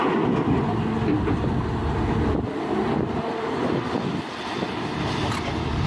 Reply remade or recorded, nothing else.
recorded